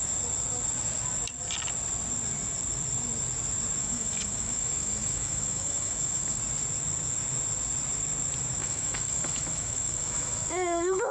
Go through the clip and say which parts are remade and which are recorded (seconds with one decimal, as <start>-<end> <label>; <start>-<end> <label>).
0.0-3.8 recorded; 3.8-6.4 remade; 6.4-8.6 recorded; 8.6-11.1 remade